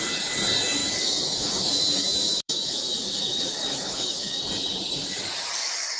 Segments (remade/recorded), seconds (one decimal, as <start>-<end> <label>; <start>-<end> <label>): 0.0-0.8 recorded; 0.8-4.4 remade; 4.4-6.0 recorded